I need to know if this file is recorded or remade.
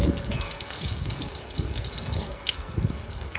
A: remade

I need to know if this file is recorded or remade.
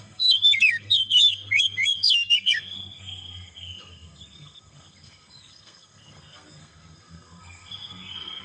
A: remade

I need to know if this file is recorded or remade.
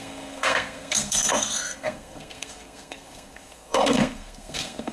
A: remade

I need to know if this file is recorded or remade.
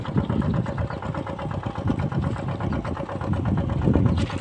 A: recorded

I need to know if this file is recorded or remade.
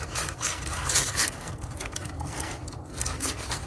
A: remade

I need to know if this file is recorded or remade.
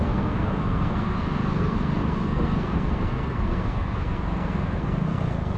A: remade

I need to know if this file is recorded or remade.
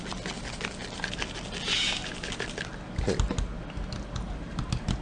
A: recorded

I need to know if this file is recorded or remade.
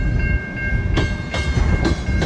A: recorded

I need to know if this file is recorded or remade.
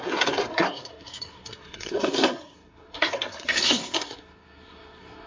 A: remade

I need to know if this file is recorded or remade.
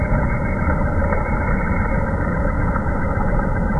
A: recorded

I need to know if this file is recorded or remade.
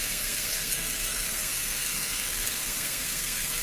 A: remade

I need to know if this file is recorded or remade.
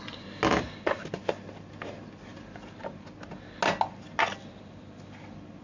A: recorded